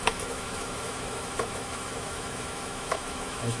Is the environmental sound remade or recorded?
remade